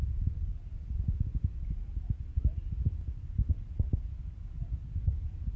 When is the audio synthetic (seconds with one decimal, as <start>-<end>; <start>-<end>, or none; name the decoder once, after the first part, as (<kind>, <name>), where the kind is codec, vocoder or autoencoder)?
none

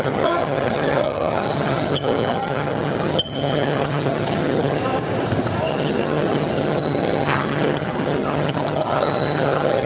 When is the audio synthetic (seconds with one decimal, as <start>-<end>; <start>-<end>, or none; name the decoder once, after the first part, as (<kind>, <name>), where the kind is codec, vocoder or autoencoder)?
0.0-4.8 (vocoder, HiFi-GAN); 5.7-9.9

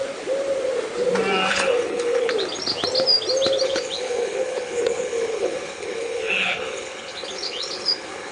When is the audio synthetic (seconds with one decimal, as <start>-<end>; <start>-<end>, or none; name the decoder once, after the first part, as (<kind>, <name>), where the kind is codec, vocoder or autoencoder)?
1.5-2.3 (codec, HILCodec); 3.6-8.3

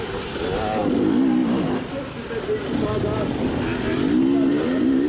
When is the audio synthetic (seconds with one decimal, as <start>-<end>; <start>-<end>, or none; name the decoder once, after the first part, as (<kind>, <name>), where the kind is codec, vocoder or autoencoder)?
none

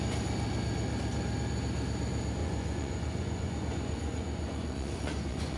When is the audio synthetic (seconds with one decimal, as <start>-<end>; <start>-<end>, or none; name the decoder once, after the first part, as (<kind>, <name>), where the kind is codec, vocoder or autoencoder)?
2.4-5.6 (vocoder, Vocos)